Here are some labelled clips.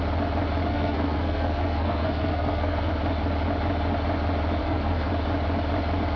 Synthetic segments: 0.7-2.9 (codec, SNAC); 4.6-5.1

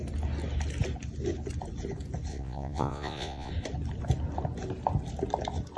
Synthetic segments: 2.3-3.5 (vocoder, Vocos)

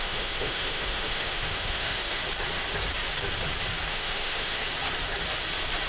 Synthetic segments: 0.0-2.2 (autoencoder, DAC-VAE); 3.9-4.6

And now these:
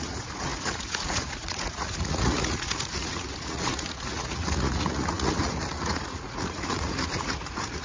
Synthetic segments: 0.0-7.8 (vocoder, Vocos)